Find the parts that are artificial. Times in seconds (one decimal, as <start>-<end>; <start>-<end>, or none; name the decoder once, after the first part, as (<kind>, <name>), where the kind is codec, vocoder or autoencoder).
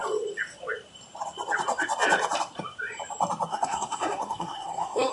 3.5-5.1 (codec, SNAC)